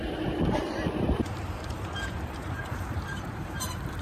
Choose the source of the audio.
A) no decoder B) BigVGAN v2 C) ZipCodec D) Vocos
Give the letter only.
B